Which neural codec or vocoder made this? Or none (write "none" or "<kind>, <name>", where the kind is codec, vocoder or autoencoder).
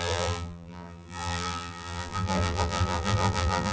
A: vocoder, BigVGAN v2